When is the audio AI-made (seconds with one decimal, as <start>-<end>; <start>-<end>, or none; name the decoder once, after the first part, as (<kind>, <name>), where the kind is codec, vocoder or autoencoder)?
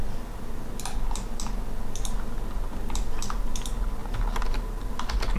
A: none